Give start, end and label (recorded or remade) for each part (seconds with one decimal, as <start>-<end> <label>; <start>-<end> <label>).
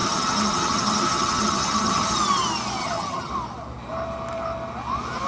0.0-2.1 remade; 2.1-2.8 recorded; 2.8-3.3 remade; 3.3-5.3 recorded